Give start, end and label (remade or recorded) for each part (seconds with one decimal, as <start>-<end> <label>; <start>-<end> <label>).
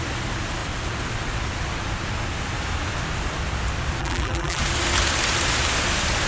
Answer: 0.0-4.0 recorded; 4.0-4.6 remade; 4.6-6.3 recorded